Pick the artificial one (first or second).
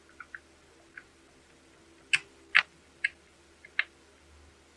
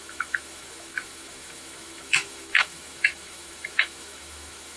second